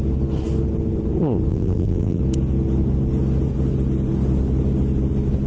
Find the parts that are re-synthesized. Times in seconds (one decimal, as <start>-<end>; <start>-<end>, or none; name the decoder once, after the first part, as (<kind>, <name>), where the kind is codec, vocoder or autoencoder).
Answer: 1.5-2.2 (vocoder, BigVGAN v2)